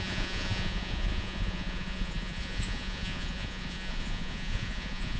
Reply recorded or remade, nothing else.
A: remade